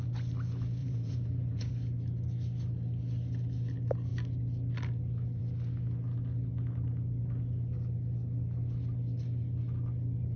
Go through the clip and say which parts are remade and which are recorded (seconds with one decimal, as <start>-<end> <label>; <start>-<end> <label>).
0.0-0.8 recorded; 0.8-1.7 remade; 1.7-10.4 recorded